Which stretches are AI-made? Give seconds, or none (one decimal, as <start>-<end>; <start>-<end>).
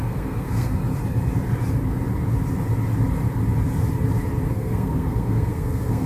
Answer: 0.0-0.8; 4.5-6.1